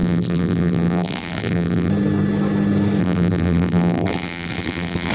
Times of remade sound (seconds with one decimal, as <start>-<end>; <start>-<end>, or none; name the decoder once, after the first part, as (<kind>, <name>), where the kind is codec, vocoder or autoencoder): 0.0-1.9 (vocoder, BigVGAN v2); 3.0-5.1